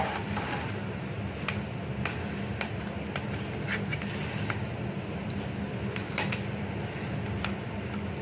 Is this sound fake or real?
real